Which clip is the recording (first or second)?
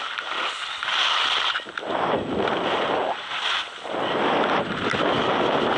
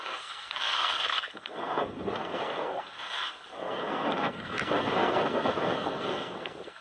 first